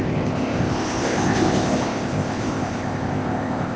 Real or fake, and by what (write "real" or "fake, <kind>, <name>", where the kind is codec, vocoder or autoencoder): fake, codec, ZipCodec